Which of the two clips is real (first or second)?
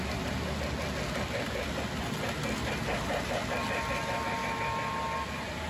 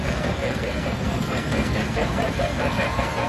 first